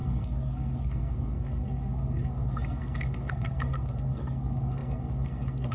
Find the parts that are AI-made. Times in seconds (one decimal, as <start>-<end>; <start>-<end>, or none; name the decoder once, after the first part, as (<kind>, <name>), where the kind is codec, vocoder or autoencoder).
0.0-5.7 (codec, SNAC)